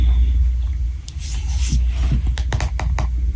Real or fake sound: real